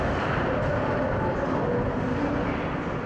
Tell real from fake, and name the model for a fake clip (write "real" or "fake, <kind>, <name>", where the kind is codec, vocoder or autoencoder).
real